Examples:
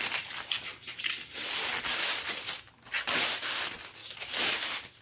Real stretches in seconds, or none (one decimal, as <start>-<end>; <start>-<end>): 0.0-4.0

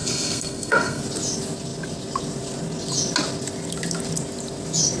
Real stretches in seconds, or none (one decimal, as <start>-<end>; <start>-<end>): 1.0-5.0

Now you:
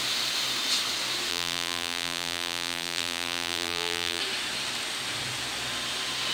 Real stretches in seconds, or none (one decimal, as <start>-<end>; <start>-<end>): 0.0-1.3; 4.2-6.3